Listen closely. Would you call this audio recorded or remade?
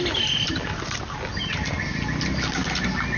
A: recorded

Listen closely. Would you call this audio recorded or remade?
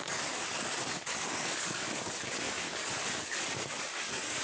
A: remade